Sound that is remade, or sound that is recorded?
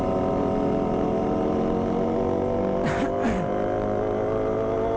recorded